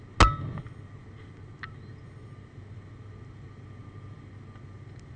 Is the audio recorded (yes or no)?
yes